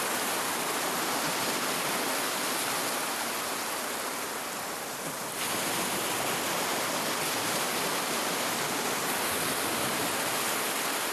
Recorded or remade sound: recorded